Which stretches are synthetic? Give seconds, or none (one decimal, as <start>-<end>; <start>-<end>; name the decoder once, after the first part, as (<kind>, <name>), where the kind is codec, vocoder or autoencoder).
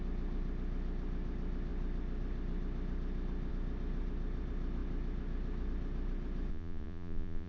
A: 6.5-7.5 (vocoder, Vocos)